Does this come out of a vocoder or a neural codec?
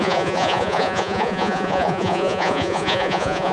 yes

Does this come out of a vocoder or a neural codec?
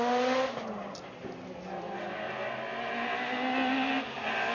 no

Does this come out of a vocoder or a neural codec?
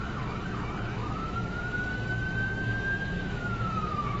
yes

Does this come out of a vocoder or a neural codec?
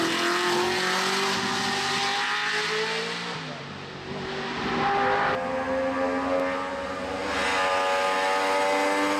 no